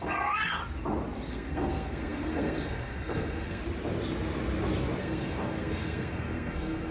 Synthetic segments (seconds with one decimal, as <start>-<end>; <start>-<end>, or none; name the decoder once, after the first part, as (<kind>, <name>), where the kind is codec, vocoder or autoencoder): 0.0-0.6 (codec, SNAC); 1.3-3.6; 5.0-6.9